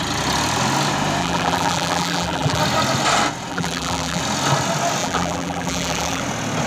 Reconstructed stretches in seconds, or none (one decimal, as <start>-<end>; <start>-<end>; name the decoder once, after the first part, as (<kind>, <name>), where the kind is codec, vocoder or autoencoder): 1.2-2.6 (vocoder, BigVGAN v2); 3.5-4.2; 5.0-6.2